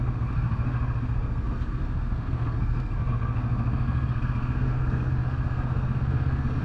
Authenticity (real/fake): fake